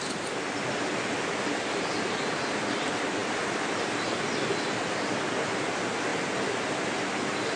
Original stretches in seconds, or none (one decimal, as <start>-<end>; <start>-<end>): 0.0-7.6